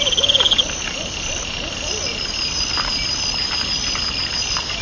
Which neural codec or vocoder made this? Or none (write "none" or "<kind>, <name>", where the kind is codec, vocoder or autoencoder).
none